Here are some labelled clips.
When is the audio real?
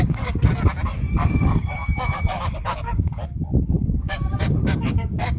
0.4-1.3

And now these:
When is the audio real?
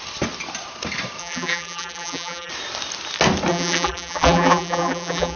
0.0-1.2; 2.5-3.5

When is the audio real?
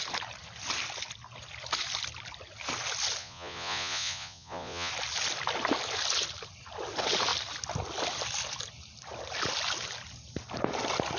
0.0-3.2; 4.9-11.2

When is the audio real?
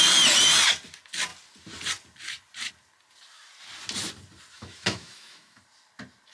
0.0-4.5; 5.6-6.3